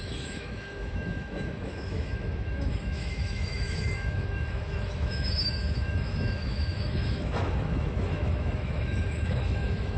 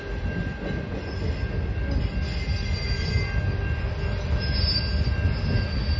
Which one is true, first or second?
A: second